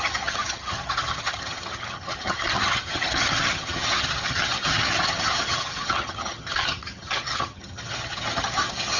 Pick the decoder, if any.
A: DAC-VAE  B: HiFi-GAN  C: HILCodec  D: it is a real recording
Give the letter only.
B